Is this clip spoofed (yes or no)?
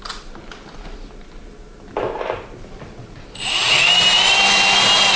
no